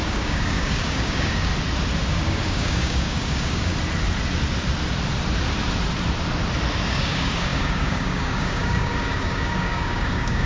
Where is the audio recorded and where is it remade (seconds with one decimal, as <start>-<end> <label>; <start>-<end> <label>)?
0.0-1.5 remade; 1.5-2.1 recorded; 2.1-3.7 remade; 3.7-6.8 recorded; 6.8-10.5 remade